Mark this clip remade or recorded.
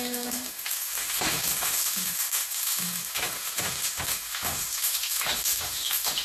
remade